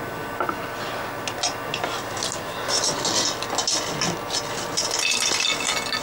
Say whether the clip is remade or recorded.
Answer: recorded